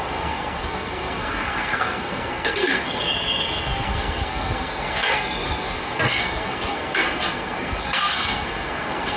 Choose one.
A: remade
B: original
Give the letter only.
A